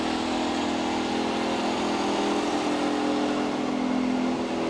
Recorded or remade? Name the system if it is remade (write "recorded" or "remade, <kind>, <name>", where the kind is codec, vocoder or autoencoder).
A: recorded